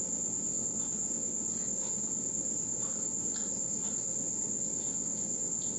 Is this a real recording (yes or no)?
yes